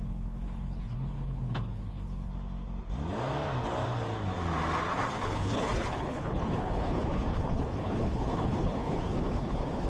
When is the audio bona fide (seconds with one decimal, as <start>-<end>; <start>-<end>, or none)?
2.3-5.2